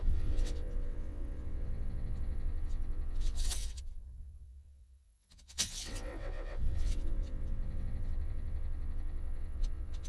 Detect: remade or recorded remade